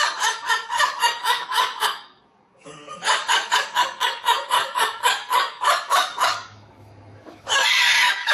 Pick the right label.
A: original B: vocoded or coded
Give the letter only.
B